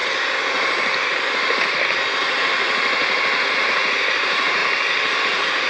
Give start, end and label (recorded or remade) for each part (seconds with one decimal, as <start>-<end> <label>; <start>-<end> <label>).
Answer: 0.0-3.4 recorded; 3.4-4.6 remade; 4.6-5.2 recorded; 5.2-5.7 remade